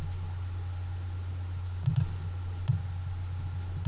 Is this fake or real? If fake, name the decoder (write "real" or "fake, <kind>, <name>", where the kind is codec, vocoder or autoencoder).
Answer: real